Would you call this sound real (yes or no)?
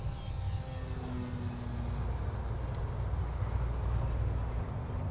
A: yes